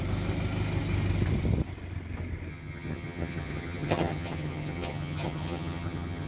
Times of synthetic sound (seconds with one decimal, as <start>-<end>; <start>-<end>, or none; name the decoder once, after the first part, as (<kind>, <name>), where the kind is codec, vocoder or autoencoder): 2.5-6.3 (vocoder, HiFi-GAN)